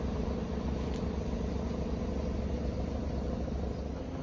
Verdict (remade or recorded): recorded